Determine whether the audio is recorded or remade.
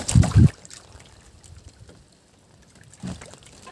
recorded